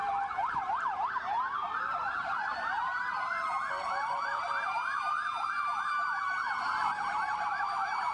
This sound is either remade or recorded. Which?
remade